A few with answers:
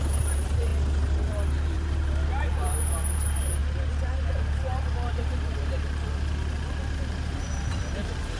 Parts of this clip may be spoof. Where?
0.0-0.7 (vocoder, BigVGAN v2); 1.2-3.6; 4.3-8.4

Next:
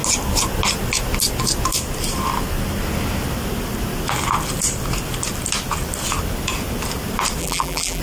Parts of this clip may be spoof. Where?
7.4-8.0 (vocoder, BigVGAN v2)

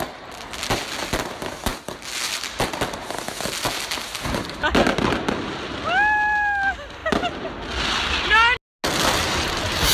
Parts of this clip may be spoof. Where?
none